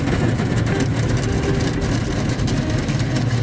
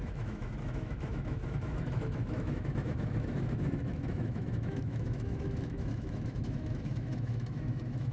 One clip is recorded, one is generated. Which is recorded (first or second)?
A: first